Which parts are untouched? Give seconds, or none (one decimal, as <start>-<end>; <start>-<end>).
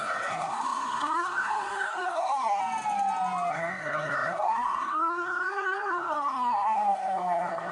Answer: 2.6-3.5